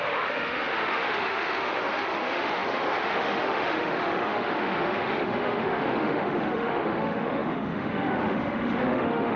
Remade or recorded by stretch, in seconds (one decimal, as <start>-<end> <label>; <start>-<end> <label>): 0.0-9.4 remade